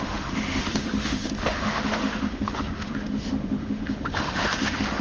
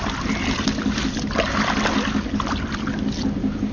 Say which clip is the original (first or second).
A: second